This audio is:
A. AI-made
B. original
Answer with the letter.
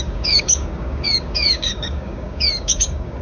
A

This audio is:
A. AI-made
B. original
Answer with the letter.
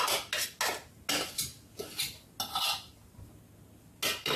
B